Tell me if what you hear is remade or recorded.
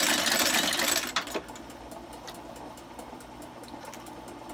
recorded